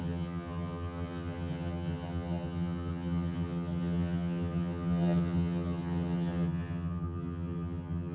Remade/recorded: remade